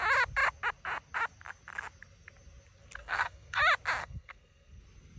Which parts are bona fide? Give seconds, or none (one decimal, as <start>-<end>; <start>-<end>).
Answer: 0.0-3.0; 3.6-4.0; 4.8-5.2